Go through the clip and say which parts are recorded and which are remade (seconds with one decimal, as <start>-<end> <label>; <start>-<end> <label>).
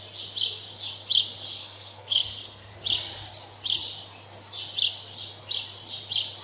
0.0-1.6 recorded; 1.6-2.7 remade; 2.7-6.4 recorded